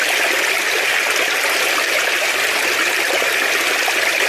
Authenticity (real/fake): real